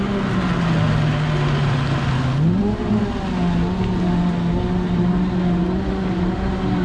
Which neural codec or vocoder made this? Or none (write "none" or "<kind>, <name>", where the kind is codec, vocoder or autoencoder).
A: none